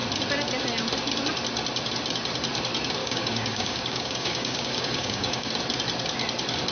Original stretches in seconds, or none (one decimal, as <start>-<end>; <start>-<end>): 0.0-3.0; 5.5-6.7